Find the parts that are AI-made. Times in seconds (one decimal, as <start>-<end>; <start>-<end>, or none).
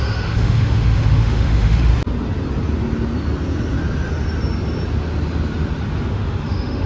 0.0-1.9; 6.0-6.9